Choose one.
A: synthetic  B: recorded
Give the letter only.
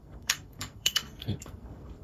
A